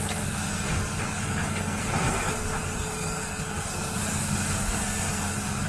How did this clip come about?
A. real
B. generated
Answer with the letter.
B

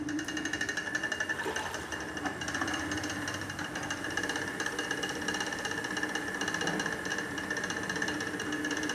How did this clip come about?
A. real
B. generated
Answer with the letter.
A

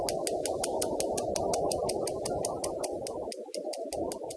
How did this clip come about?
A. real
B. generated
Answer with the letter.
A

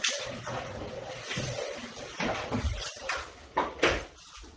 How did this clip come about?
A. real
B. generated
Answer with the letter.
A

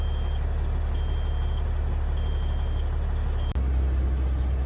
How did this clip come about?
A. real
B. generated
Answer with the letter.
A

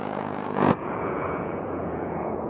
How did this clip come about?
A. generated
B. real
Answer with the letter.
A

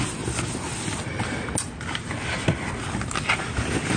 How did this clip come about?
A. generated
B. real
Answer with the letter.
B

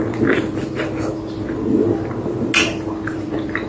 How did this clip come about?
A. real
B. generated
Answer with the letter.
A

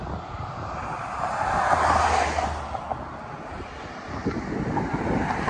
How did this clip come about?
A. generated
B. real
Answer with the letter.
B